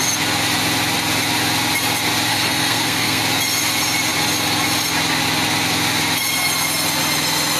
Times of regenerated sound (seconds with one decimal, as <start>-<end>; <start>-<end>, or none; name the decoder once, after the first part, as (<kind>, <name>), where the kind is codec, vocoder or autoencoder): 2.3-3.2 (codec, SNAC)